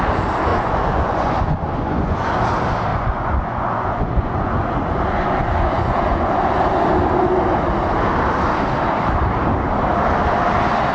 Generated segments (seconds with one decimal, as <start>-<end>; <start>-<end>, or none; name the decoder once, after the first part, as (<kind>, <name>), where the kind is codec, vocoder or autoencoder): 0.5-2.3 (vocoder, Vocos); 2.9-6.3